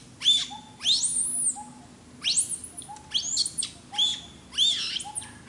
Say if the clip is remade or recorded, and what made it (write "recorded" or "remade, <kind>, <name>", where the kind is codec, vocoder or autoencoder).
recorded